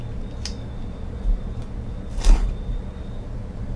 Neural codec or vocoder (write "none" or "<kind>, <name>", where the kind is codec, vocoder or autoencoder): none